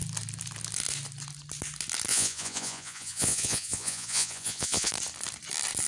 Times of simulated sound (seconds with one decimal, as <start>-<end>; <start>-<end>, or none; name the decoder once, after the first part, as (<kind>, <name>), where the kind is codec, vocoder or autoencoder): 2.1-4.9 (vocoder, Vocos)